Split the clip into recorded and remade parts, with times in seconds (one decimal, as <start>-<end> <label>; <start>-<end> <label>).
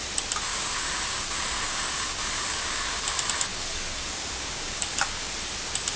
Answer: 0.0-0.5 recorded; 0.5-3.0 remade; 3.0-3.5 recorded; 3.5-5.3 remade; 5.3-6.0 recorded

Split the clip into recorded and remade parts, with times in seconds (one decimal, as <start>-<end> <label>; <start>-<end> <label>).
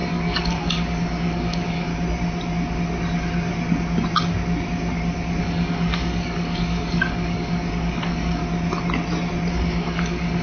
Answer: 0.0-1.9 remade; 1.9-5.4 recorded; 5.4-8.4 remade; 8.4-9.5 recorded; 9.5-10.4 remade